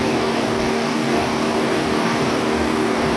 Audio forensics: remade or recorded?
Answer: remade